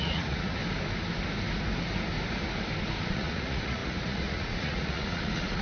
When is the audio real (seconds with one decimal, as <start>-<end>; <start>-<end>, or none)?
0.6-3.1